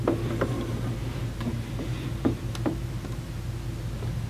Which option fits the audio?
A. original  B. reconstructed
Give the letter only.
A